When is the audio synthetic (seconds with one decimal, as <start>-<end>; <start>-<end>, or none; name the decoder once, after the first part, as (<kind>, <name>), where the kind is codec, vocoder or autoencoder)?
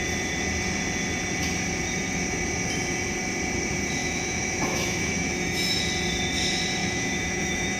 4.0-5.8 (autoencoder, DAC-VAE); 6.8-7.8